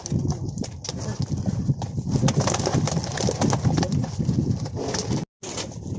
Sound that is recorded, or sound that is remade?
recorded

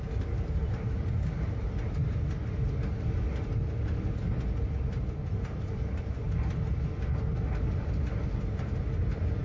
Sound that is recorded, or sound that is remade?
recorded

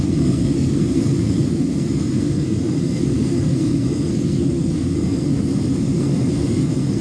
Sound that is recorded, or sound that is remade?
remade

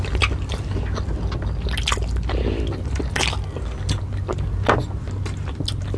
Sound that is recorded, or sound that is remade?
recorded